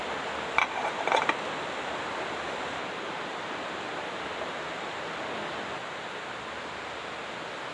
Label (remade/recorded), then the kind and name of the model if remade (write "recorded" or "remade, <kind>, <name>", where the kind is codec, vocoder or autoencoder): recorded